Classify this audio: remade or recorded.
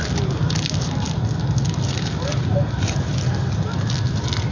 recorded